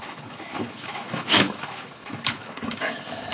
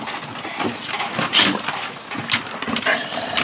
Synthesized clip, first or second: first